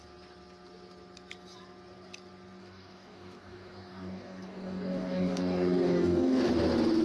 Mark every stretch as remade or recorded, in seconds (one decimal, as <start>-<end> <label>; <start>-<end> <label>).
0.0-2.6 recorded; 2.6-6.5 remade; 6.5-7.0 recorded